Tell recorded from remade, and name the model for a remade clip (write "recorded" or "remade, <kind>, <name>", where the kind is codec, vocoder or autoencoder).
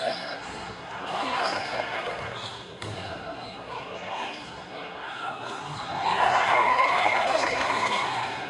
remade, codec, SNAC